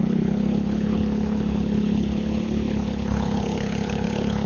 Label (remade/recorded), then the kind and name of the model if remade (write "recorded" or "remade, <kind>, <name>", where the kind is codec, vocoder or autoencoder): remade, codec, HILCodec